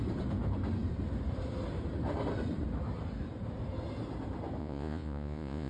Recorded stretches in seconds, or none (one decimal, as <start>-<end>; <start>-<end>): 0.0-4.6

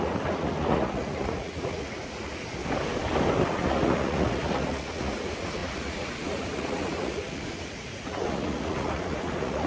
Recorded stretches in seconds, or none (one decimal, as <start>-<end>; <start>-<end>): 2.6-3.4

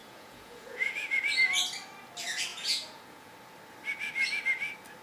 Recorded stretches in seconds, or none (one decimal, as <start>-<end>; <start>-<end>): 1.2-2.5; 3.3-5.0

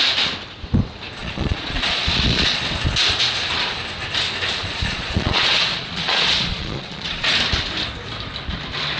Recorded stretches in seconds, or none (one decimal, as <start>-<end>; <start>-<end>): 0.0-1.2; 2.6-4.6; 7.3-9.0

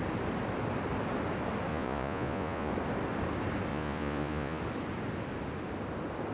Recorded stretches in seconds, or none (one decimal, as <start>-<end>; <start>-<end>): 0.0-1.7; 2.7-3.7; 4.6-6.3

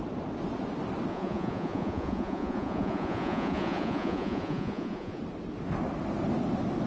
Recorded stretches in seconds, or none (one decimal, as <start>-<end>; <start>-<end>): 0.0-1.1; 5.2-6.9